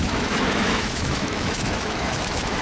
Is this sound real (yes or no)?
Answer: no